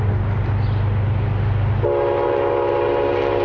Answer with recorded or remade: recorded